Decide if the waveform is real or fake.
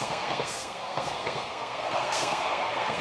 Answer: fake